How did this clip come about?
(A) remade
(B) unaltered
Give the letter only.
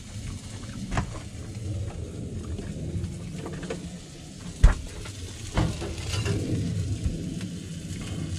B